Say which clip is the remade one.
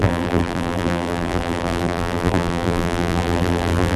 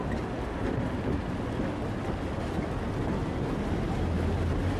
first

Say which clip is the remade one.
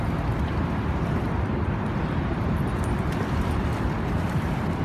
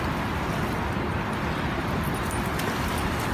first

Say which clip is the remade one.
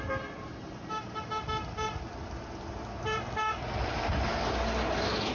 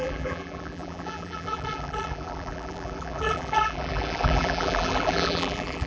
second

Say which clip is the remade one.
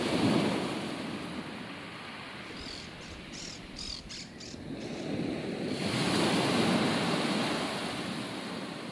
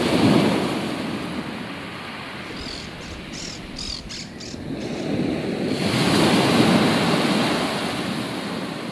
first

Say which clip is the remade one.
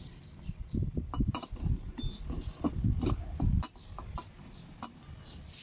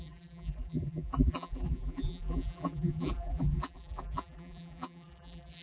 second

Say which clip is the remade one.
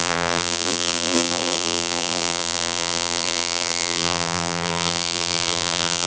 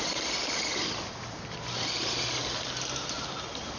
first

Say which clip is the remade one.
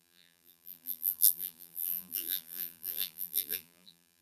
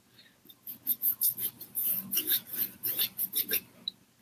first